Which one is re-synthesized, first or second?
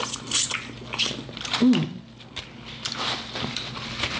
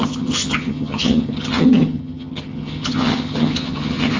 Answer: second